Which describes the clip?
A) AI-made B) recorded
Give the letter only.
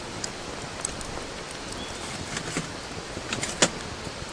B